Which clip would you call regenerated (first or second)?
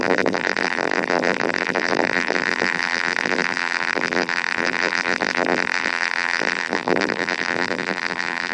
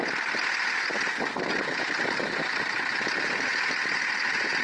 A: first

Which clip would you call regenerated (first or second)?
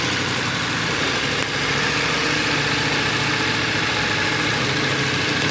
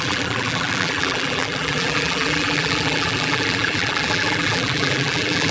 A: second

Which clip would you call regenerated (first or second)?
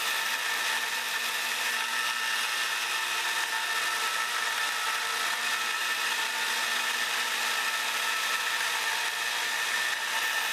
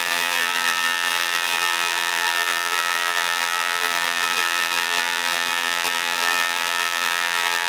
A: second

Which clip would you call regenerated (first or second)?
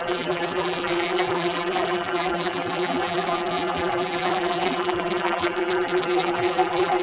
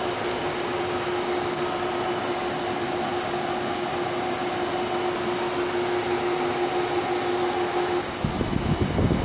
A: first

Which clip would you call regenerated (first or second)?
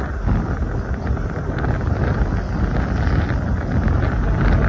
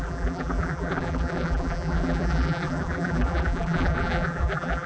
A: second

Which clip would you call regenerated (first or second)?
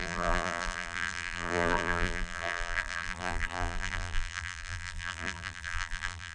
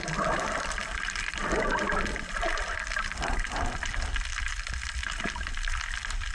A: first